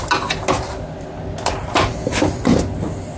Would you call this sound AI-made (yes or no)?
no